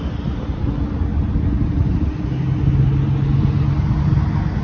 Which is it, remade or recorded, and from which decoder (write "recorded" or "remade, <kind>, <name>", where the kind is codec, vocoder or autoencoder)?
recorded